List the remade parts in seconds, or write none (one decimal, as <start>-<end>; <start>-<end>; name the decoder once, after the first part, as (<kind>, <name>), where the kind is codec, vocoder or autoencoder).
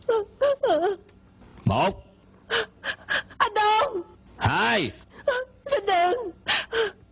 none